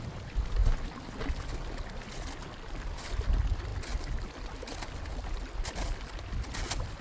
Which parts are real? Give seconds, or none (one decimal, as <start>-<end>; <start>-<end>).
0.0-7.0